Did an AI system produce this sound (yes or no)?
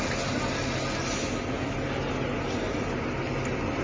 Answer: no